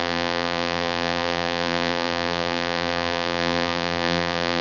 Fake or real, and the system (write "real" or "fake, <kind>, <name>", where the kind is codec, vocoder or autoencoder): fake, vocoder, BigVGAN v2